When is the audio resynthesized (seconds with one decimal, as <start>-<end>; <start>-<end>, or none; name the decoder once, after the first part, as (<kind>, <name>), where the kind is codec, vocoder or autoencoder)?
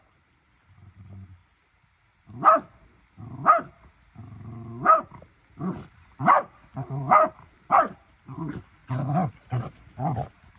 0.0-1.4 (vocoder, BigVGAN v2); 5.6-8.8; 9.9-10.6